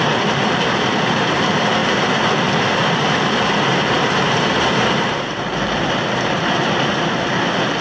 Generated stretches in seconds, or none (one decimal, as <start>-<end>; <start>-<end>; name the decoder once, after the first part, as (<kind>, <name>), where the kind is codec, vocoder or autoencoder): 0.0-7.8 (vocoder, BigVGAN v2)